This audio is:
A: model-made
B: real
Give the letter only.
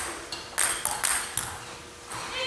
B